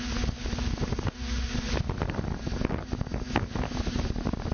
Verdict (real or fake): real